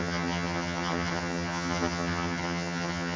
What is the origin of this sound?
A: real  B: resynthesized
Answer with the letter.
B